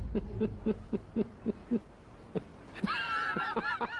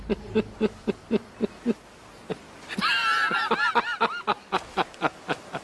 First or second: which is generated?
first